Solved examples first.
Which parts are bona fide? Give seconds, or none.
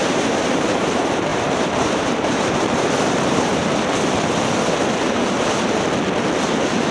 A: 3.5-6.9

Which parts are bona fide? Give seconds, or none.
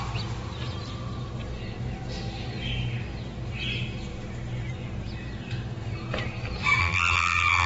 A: 0.0-6.8